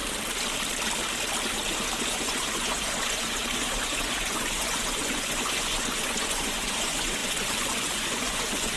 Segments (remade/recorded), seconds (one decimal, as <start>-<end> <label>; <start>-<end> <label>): 0.0-2.0 recorded; 2.0-8.8 remade